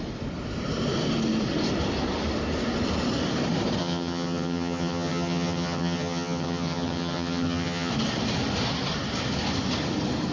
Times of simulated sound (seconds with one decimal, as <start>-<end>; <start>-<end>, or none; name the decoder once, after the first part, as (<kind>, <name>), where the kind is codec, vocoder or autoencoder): 3.8-7.9 (vocoder, HiFi-GAN)